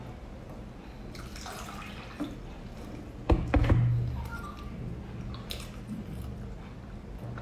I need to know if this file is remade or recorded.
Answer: recorded